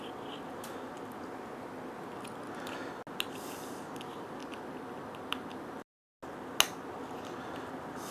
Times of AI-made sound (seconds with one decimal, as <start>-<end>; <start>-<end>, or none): 4.4-6.1